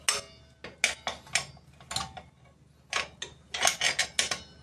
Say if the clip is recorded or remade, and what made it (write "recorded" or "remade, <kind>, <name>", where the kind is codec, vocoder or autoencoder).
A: recorded